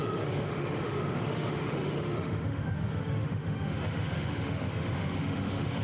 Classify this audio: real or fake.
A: fake